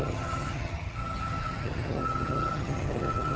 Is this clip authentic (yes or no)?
no